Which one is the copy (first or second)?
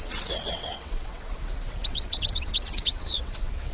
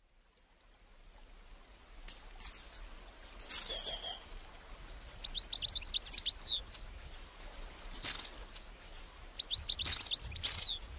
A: first